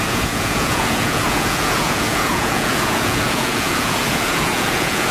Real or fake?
fake